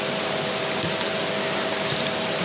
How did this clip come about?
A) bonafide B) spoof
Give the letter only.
A